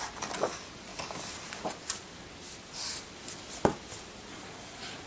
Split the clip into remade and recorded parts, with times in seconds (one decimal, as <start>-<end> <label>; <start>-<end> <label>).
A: 0.0-5.1 recorded